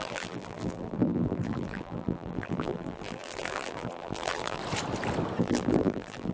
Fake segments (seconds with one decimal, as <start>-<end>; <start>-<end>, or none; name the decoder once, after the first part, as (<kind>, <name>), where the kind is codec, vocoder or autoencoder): 0.0-4.6 (vocoder, BigVGAN v2); 5.4-6.3